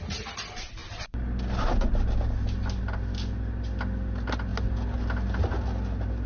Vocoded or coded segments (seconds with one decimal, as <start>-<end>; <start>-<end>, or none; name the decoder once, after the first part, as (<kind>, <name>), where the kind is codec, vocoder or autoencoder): none